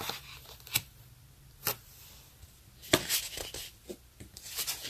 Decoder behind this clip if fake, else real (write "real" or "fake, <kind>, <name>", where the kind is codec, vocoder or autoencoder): real